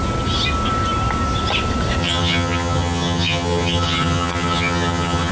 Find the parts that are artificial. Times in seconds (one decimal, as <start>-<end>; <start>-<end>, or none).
2.0-5.3